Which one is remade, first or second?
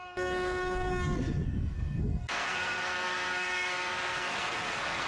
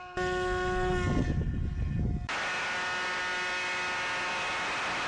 first